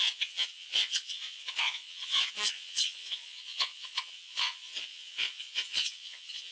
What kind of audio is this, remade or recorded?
remade